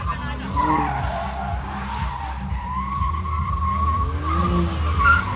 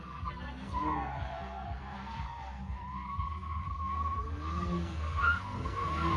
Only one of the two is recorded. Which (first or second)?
first